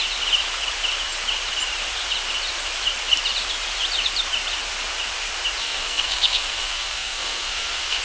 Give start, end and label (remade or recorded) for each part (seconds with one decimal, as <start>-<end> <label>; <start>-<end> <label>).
0.0-5.6 recorded; 5.6-8.0 remade